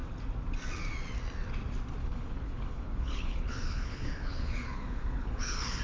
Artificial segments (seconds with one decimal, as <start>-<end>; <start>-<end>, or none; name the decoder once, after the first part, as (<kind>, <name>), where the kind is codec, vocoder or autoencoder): 2.0-5.8 (codec, HILCodec)